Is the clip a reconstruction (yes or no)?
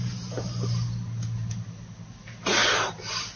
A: no